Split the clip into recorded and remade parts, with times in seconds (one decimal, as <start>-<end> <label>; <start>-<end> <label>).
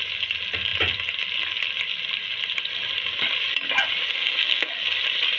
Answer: 0.0-4.1 recorded; 4.1-4.7 remade; 4.7-5.4 recorded